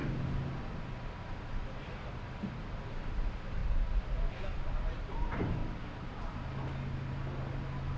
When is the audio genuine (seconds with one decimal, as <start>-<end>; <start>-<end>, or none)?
0.0-1.7; 3.6-5.1; 5.6-8.0